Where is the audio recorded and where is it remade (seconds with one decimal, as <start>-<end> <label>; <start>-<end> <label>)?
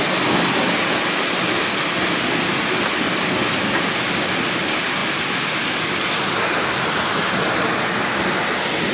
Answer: 0.0-8.9 recorded